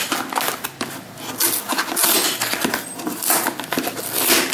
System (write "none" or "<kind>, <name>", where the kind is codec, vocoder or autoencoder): none